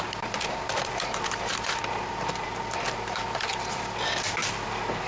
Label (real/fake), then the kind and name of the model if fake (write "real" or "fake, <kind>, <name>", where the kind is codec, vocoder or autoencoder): real